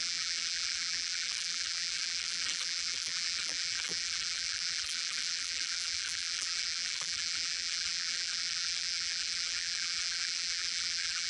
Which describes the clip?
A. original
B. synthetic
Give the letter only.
B